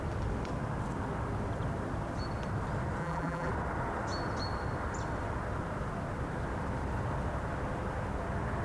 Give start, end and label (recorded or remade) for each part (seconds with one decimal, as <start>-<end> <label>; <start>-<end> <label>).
0.0-3.0 recorded; 3.0-3.5 remade; 3.5-8.6 recorded